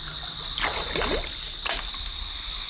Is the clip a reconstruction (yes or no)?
no